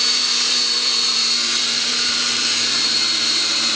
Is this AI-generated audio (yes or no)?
yes